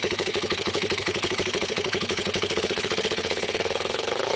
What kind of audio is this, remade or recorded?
remade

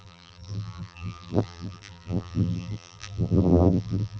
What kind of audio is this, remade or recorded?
remade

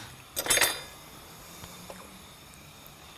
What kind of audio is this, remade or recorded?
recorded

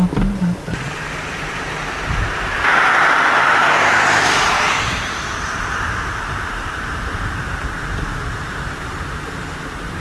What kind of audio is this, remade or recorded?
remade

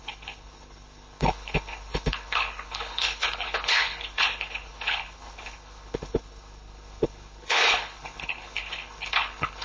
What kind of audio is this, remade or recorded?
remade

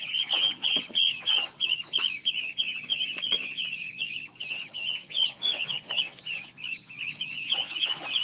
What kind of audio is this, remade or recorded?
remade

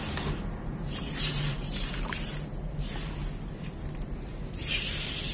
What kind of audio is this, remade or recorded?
remade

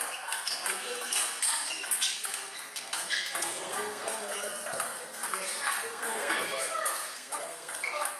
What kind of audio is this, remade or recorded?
remade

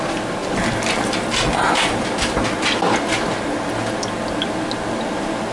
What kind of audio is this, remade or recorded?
recorded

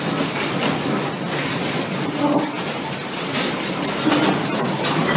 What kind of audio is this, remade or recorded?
recorded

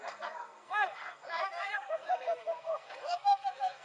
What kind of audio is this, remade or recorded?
remade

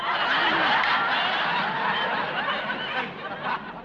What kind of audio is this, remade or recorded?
recorded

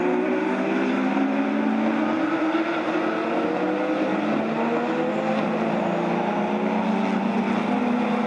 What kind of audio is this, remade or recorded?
recorded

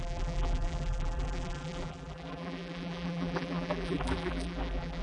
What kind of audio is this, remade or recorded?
remade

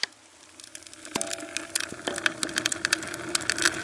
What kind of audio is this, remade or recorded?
recorded